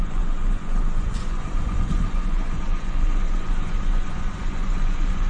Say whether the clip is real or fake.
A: fake